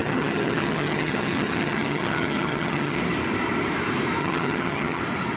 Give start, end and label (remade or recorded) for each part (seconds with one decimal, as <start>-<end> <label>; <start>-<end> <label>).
0.0-3.0 remade; 3.0-4.2 recorded; 4.2-5.0 remade; 5.0-5.4 recorded